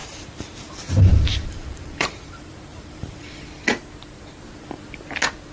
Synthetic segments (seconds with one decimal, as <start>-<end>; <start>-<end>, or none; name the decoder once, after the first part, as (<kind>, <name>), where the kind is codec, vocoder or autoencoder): 0.0-3.3 (vocoder, BigVGAN v2)